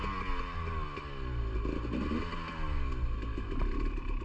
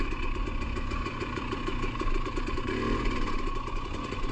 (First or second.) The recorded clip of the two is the first